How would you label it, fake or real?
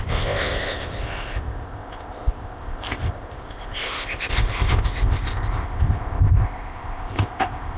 fake